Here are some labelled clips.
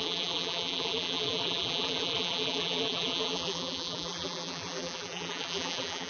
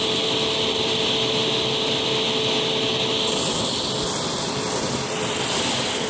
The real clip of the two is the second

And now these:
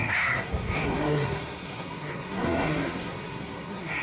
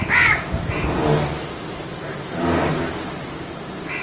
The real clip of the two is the second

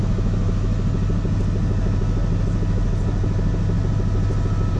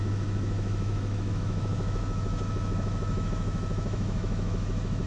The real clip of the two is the first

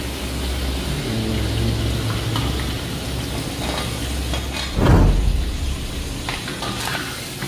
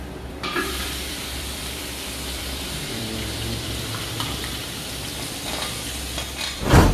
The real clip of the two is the first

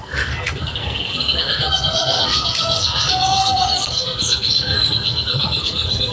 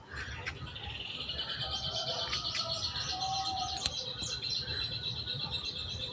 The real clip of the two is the second